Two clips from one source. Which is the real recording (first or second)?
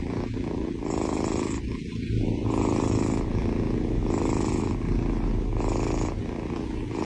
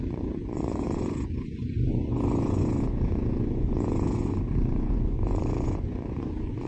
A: first